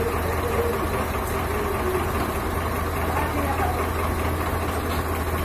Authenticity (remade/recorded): recorded